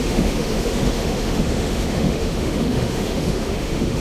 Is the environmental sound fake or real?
fake